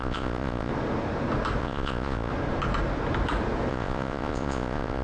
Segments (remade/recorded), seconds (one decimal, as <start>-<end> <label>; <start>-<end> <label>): 0.0-0.7 remade; 0.7-1.6 recorded; 1.6-2.3 remade; 2.3-3.7 recorded; 3.7-5.0 remade